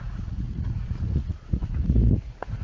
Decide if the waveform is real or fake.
fake